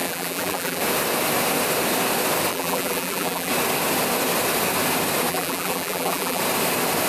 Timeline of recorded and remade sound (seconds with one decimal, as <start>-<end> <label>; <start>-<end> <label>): 0.0-0.8 remade; 0.8-2.5 recorded; 2.5-3.5 remade; 3.5-5.3 recorded; 5.3-6.4 remade; 6.4-7.1 recorded